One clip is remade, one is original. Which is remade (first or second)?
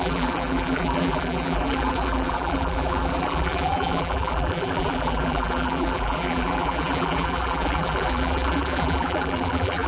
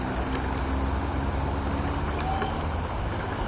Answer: first